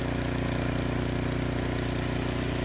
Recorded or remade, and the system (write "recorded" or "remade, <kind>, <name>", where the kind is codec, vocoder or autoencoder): recorded